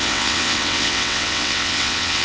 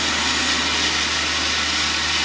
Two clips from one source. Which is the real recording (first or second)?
second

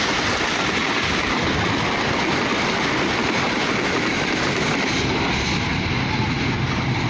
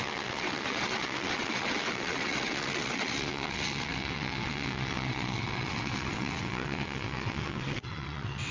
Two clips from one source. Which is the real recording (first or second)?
first